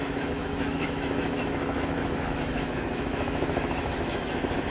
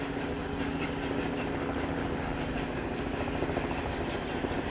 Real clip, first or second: second